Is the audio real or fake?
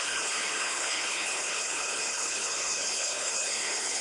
fake